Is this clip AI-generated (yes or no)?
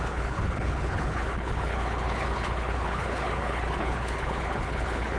yes